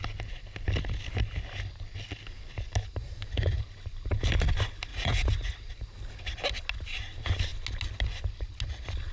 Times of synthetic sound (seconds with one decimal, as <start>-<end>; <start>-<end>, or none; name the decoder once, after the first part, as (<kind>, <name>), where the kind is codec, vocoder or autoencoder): 3.0-3.6 (vocoder, Vocos); 4.9-5.8